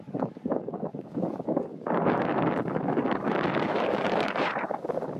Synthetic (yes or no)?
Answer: yes